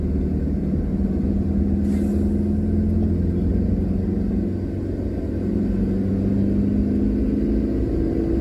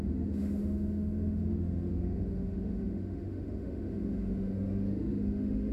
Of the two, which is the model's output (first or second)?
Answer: second